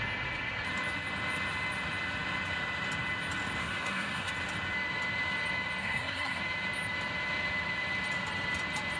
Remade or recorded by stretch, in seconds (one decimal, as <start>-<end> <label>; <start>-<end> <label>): 0.0-3.6 recorded; 3.6-4.3 remade; 4.3-5.8 recorded; 5.8-6.4 remade; 6.4-9.0 recorded